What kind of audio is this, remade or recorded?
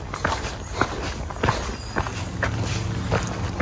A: recorded